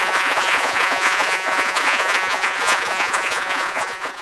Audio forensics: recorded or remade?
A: remade